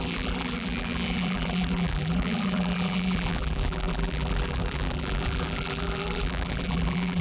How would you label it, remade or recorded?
remade